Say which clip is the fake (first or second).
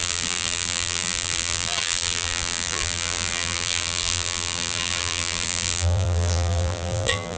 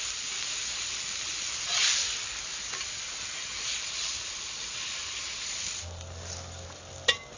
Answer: first